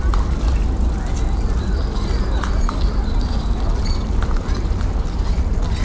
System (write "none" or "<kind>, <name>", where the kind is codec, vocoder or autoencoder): none